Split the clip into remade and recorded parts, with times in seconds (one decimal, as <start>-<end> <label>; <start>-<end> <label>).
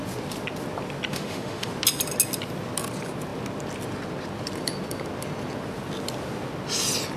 0.0-1.1 recorded; 1.1-1.7 remade; 1.7-7.2 recorded